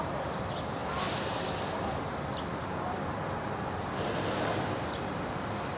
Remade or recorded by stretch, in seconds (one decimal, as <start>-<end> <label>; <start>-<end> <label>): 0.0-5.8 recorded

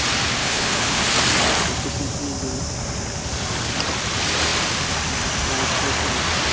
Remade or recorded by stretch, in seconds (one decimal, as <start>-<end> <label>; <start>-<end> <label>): 0.0-0.4 recorded; 0.4-1.0 remade; 1.0-6.5 recorded

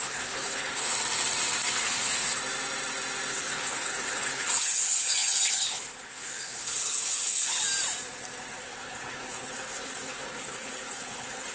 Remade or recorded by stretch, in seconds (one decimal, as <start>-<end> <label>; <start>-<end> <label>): 0.0-0.9 remade; 0.9-1.8 recorded; 1.8-2.3 remade; 2.3-3.3 recorded; 3.3-7.6 remade; 7.6-8.6 recorded; 8.6-11.5 remade

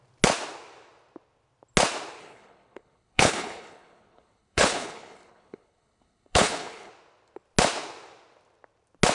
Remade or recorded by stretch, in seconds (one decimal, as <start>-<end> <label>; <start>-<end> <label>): 0.0-2.2 recorded; 2.2-6.9 remade; 6.9-9.1 recorded

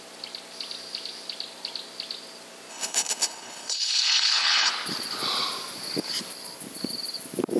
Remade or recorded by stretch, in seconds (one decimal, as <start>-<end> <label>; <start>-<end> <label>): 0.0-2.7 recorded; 2.7-4.7 remade; 4.7-7.6 recorded